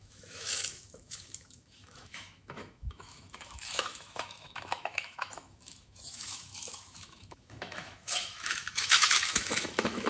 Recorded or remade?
remade